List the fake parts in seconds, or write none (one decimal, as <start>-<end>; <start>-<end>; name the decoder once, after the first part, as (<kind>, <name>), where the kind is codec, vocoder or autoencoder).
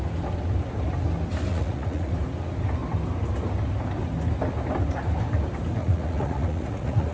1.5-2.1 (vocoder, Vocos); 5.8-7.1